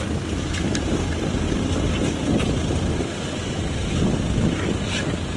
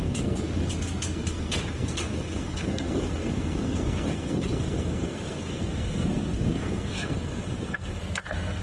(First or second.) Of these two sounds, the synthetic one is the second